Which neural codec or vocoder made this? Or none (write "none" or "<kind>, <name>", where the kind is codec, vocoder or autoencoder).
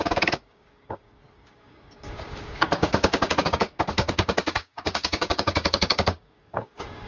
codec, DAC